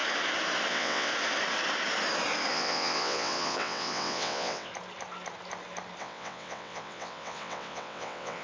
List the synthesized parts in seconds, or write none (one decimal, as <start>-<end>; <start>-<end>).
0.7-1.1; 2.5-4.7; 6.0-8.4